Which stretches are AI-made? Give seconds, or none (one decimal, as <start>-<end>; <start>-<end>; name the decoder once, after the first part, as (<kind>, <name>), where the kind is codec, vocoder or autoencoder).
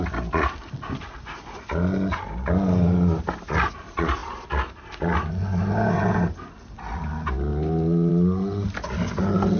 none